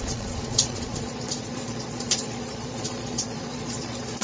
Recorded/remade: remade